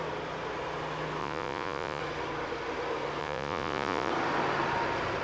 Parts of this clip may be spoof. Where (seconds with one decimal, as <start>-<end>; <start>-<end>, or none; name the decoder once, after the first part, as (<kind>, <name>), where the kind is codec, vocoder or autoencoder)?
1.2-2.0 (vocoder, Vocos); 3.2-4.1